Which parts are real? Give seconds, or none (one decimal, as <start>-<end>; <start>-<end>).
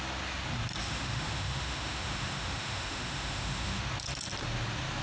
0.0-0.8; 3.8-5.0